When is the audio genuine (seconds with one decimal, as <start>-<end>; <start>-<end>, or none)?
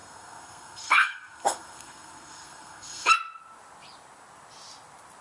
3.1-5.2